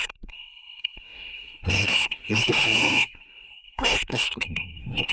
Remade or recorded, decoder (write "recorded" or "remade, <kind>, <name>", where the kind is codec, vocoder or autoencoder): remade, codec, SNAC